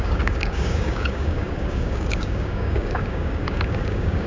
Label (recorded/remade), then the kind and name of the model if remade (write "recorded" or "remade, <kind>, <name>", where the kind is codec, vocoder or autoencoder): remade, codec, DAC